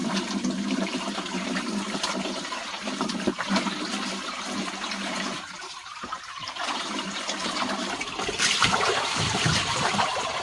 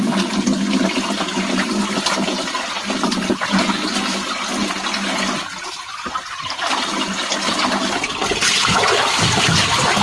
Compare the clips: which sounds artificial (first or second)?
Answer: first